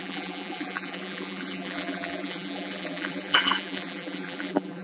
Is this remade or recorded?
remade